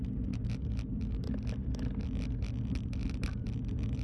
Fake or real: real